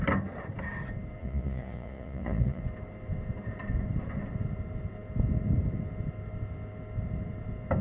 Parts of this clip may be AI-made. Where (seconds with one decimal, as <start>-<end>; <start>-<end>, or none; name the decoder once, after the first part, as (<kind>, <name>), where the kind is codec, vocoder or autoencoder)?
1.2-2.6 (vocoder, Vocos)